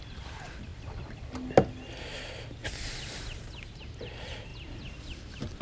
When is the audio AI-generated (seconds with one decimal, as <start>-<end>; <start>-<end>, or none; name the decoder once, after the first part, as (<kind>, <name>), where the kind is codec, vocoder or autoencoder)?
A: 0.0-0.7 (vocoder, BigVGAN v2); 3.8-4.5